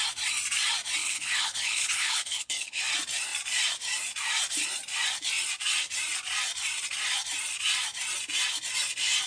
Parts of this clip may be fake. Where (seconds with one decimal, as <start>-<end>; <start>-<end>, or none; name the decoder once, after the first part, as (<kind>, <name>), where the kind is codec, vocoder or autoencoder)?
1.0-2.8 (codec, HILCodec)